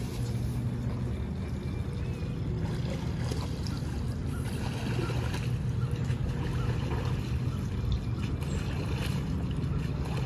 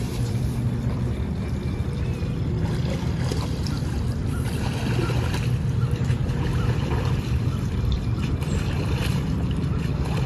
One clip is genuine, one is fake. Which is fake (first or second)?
second